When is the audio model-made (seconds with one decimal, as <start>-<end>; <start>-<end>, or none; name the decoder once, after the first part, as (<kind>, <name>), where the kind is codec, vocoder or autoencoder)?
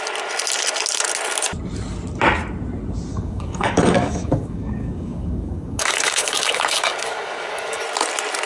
3.1-7.8 (codec, DAC)